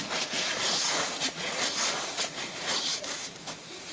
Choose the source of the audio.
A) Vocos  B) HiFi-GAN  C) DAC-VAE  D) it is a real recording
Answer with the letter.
A